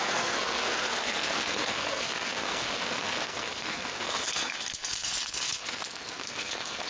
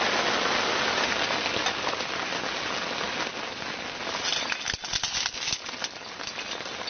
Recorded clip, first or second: second